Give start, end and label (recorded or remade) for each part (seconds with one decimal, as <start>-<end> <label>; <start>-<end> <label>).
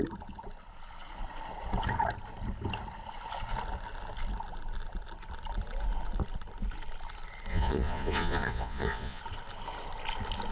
0.0-7.5 recorded; 7.5-9.2 remade; 9.2-10.5 recorded